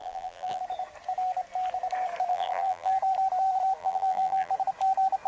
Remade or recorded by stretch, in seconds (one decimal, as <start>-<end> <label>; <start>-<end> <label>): 0.0-0.6 remade; 0.6-2.3 recorded; 2.3-2.9 remade; 2.9-3.8 recorded; 3.8-4.5 remade; 4.5-5.3 recorded

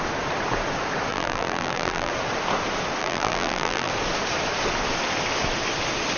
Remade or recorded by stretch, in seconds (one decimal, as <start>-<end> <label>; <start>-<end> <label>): 0.0-1.1 recorded; 1.1-2.1 remade; 2.1-3.0 recorded; 3.0-3.9 remade; 3.9-6.2 recorded

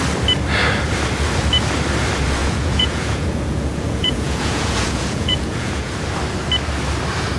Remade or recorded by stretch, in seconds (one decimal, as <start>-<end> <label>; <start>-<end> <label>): 0.0-2.4 recorded; 2.4-5.9 remade; 5.9-7.4 recorded

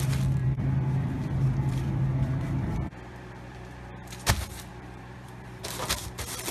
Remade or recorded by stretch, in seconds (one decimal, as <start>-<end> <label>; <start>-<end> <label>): 0.0-0.4 recorded; 0.4-4.3 remade; 4.3-4.7 recorded; 4.7-5.6 remade; 5.6-6.5 recorded